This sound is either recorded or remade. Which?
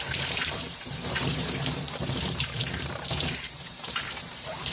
remade